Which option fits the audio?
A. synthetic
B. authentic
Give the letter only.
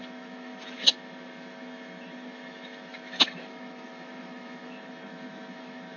A